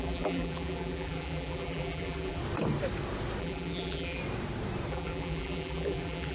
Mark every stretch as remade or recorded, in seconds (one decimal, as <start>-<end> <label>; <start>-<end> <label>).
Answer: 0.0-2.4 remade; 2.4-3.4 recorded; 3.4-4.2 remade; 4.2-4.9 recorded; 4.9-6.3 remade